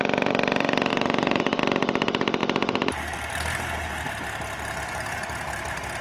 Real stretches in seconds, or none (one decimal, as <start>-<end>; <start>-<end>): 0.0-0.9; 1.6-6.0